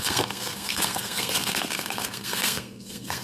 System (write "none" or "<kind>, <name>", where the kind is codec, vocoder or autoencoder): codec, SNAC